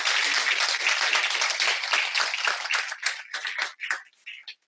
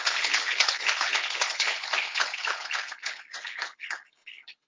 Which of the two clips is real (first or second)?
first